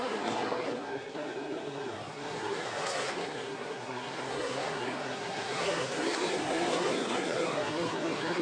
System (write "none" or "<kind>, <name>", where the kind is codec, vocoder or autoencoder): codec, SNAC